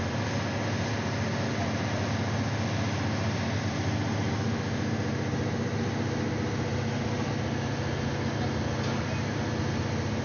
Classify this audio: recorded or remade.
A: recorded